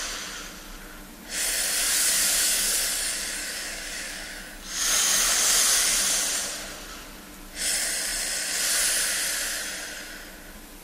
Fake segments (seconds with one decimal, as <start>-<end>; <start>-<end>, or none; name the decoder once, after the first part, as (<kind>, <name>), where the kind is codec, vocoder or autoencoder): 1.8-5.3 (codec, DAC)